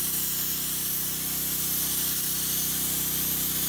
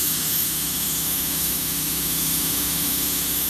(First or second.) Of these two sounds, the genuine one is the first